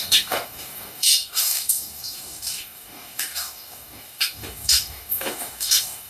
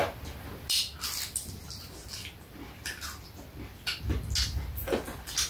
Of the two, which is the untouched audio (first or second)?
second